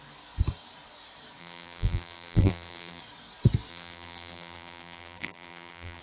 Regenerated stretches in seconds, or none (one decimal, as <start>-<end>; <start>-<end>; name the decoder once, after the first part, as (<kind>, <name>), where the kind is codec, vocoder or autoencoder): 1.4-3.0 (vocoder, BigVGAN v2); 3.7-6.0